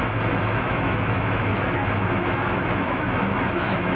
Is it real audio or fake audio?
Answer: fake